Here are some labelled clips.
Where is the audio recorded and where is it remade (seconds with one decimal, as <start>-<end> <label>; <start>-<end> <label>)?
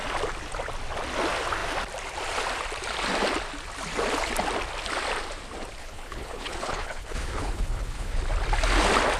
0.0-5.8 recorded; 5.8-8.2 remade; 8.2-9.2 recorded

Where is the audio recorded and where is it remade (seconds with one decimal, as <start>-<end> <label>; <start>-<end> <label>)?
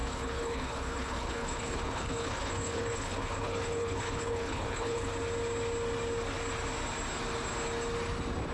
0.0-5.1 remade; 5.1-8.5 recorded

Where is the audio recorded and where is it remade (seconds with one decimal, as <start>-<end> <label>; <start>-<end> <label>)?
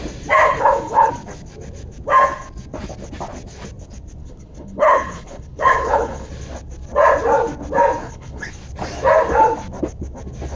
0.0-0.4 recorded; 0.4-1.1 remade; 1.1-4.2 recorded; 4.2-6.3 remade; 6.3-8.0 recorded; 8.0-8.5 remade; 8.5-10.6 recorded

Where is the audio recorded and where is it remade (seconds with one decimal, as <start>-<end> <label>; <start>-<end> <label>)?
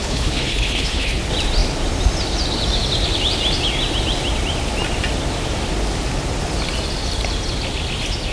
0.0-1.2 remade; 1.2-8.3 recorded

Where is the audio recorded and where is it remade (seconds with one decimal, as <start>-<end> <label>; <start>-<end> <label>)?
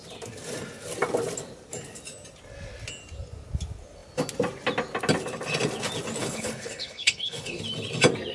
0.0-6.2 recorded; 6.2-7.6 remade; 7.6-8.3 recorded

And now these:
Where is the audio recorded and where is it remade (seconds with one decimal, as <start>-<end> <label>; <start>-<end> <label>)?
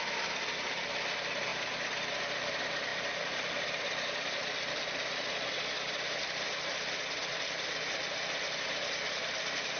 0.0-9.8 recorded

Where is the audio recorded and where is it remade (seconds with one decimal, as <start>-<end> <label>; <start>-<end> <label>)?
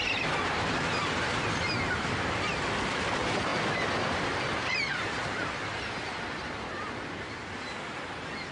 0.0-8.5 recorded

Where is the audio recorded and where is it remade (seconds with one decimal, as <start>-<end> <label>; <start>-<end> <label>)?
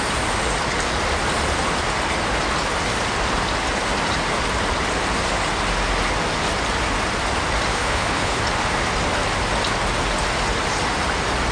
0.0-7.7 recorded; 7.7-8.4 remade; 8.4-11.5 recorded